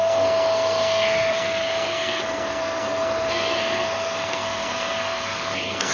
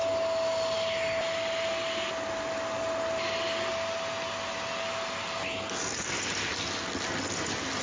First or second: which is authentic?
second